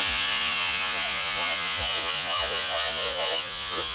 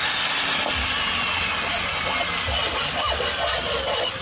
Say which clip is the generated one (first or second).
first